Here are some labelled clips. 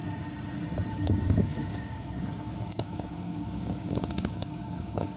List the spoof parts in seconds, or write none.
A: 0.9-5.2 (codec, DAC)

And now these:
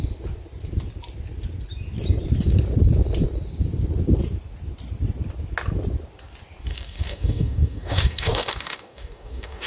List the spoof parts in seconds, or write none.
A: 6.7-9.7 (codec, DAC)

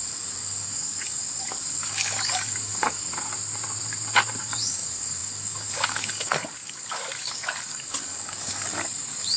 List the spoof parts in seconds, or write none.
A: 0.0-3.1 (codec, DAC); 4.4-9.4

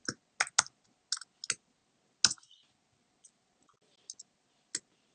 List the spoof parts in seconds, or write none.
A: none